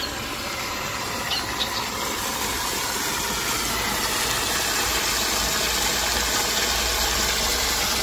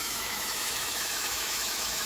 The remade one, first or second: second